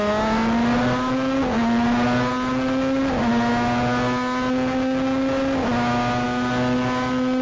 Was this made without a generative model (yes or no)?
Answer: yes